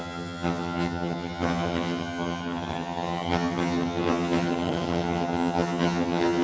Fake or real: fake